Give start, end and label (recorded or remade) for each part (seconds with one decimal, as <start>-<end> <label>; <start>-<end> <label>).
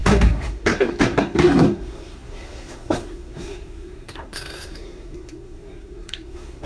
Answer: 0.0-6.7 remade